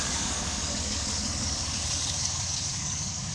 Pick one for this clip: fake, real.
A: fake